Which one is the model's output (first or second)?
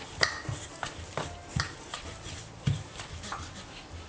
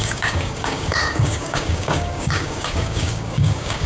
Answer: second